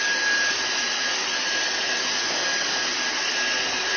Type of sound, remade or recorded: recorded